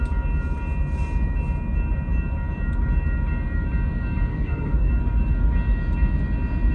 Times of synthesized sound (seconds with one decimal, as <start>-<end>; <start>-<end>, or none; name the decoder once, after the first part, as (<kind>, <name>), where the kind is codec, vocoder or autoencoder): 4.3-4.9 (codec, SNAC)